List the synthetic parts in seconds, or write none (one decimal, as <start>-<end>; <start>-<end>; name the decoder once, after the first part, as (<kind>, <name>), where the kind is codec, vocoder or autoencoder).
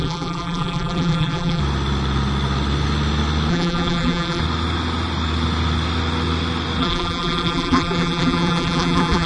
0.0-1.6 (vocoder, BigVGAN v2); 3.5-4.4; 6.8-9.3